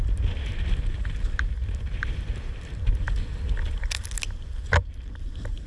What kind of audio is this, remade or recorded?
recorded